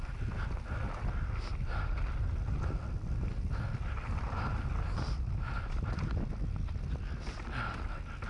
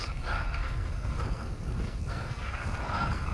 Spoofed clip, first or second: second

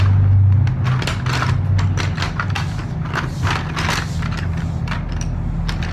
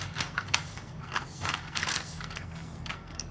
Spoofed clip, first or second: second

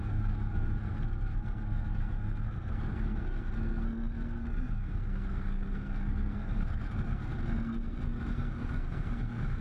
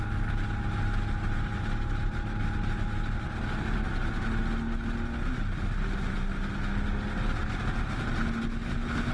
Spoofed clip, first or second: first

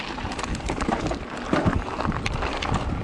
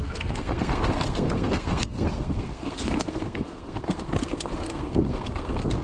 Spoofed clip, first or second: second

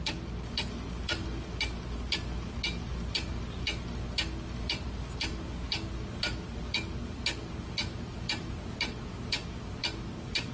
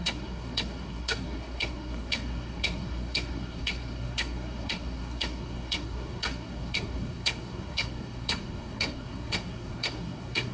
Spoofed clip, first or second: second